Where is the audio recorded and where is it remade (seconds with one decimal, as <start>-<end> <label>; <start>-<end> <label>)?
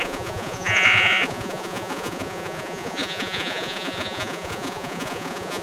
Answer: 0.0-5.6 remade